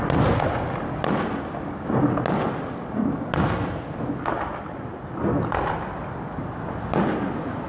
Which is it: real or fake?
real